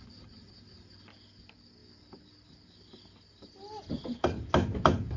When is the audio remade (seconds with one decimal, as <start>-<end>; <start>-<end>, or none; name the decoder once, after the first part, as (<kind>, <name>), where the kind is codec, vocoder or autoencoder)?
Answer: none